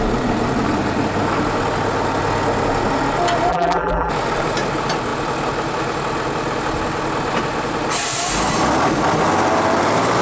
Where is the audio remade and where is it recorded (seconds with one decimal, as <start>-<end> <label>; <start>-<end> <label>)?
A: 0.0-3.5 recorded; 3.5-4.1 remade; 4.1-10.2 recorded